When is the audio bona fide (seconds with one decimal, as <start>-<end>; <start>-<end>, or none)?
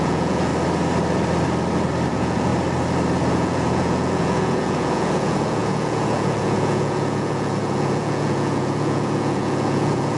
0.5-2.1; 2.5-3.3